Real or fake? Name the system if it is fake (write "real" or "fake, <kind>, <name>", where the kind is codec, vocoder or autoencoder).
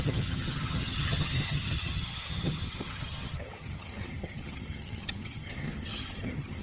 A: fake, vocoder, HiFi-GAN